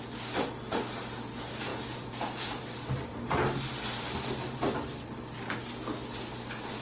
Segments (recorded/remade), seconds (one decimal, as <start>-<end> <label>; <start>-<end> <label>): 0.0-1.7 recorded; 1.7-2.6 remade; 2.6-6.8 recorded